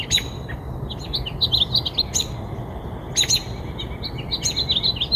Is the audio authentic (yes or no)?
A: yes